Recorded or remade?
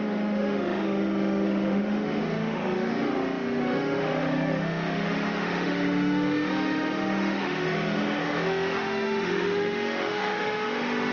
remade